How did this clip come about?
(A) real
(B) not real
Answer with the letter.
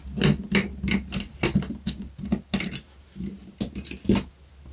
A